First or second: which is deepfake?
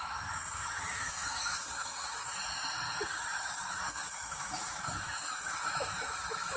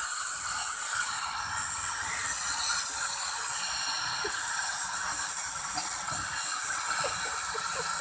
first